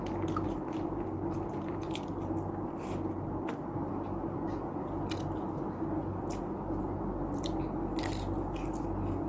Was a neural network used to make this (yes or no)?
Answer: no